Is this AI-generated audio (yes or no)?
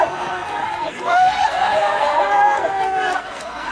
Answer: yes